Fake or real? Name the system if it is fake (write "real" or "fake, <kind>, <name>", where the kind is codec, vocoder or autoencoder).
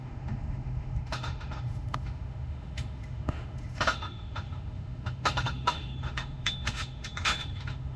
fake, autoencoder, DAC-VAE